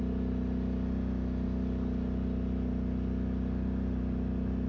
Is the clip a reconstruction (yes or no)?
no